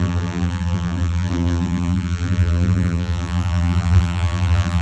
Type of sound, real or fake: fake